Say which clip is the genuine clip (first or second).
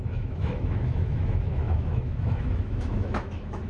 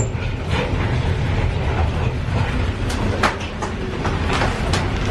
second